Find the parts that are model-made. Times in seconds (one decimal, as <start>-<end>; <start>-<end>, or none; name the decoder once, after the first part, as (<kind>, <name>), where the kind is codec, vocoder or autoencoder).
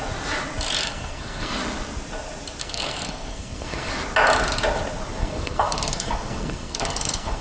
0.8-1.6 (codec, SNAC); 2.6-3.9; 5.2-7.4